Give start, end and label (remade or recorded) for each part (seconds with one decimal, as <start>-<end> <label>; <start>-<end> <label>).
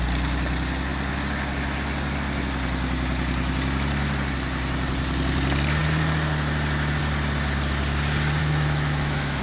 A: 0.0-8.4 recorded; 8.4-9.4 remade